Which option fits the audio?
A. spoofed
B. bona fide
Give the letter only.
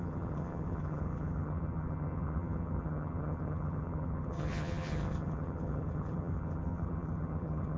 A